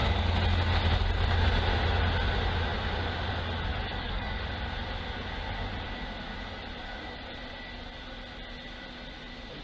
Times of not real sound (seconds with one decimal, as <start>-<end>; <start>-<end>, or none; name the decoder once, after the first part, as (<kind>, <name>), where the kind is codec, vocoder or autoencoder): 3.7-4.4 (codec, DAC)